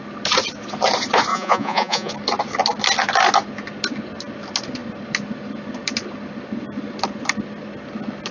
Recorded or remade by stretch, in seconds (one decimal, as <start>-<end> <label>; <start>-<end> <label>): 0.0-1.3 recorded; 1.3-2.1 remade; 2.1-8.3 recorded